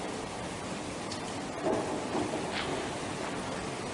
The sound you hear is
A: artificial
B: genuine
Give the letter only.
B